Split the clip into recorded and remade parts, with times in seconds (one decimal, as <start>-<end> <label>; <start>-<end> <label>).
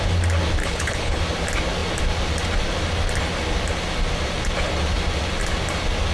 0.0-0.6 recorded; 0.6-1.2 remade; 1.2-6.1 recorded